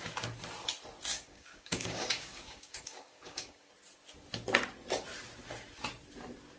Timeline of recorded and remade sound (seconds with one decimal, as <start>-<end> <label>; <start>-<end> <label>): 0.0-1.1 recorded; 1.1-3.7 remade; 3.7-6.6 recorded